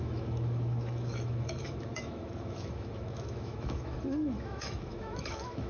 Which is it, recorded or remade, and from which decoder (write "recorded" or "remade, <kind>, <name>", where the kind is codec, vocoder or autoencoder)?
remade, autoencoder, DAC-VAE